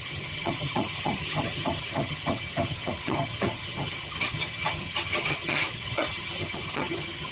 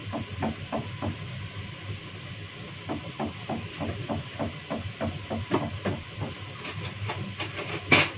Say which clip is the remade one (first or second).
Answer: first